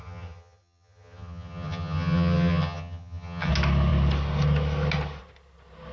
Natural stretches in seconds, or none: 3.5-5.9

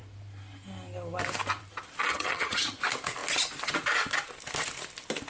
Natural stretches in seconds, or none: 0.0-2.1; 2.8-5.3

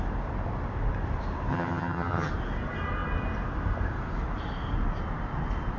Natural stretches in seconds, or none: 0.0-1.5; 2.3-5.8

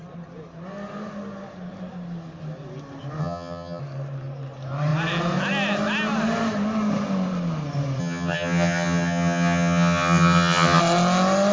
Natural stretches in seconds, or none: 0.0-3.2; 3.8-8.0; 10.8-11.5

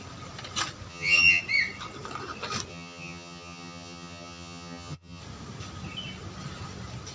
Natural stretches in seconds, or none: 0.0-0.9; 1.4-2.7; 5.2-7.1